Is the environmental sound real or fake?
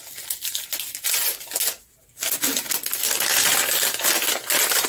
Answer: real